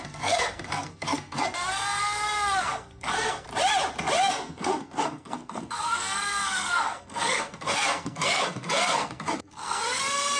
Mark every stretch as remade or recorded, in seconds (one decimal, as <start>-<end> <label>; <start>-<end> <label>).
0.0-3.5 remade; 3.5-4.2 recorded; 4.2-10.4 remade